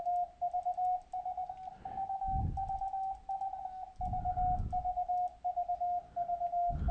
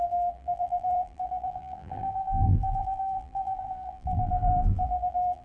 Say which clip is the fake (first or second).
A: second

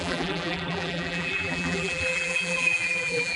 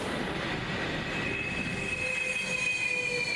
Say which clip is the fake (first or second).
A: first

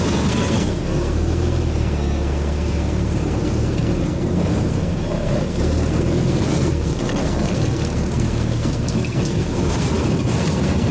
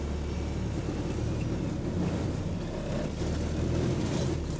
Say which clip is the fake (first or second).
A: first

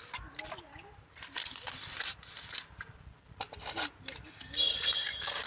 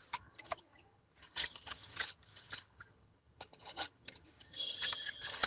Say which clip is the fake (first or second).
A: second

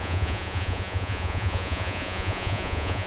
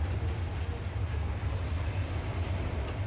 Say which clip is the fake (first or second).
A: first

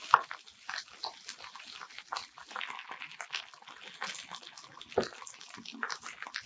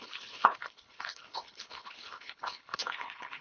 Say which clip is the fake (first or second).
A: second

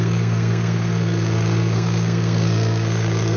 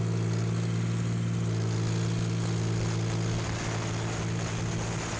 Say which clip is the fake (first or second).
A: first